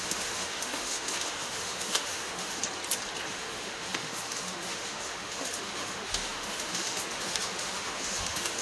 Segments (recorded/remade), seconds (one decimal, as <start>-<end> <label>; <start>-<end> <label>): 0.0-2.6 remade; 2.6-3.3 recorded; 3.3-8.6 remade